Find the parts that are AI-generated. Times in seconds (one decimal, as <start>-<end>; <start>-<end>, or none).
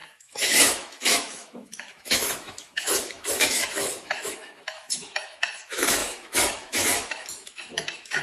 0.0-8.2